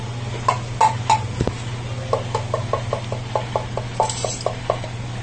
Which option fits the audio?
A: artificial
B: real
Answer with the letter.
B